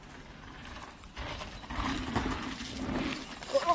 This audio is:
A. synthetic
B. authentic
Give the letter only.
B